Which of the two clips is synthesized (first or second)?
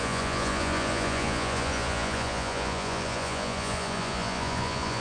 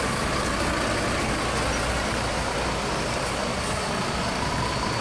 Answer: first